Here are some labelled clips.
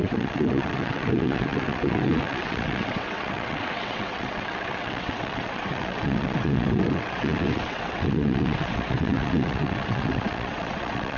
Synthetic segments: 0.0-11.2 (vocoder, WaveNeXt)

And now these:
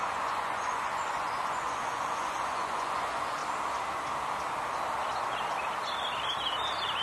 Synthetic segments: 0.0-3.4 (vocoder, Vocos)